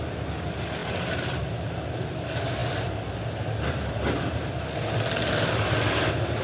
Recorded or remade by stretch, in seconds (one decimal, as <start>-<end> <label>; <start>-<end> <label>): 0.0-6.4 recorded